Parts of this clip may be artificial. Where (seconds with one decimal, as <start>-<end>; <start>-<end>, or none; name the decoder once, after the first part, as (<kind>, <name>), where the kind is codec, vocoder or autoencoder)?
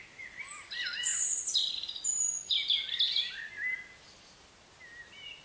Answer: none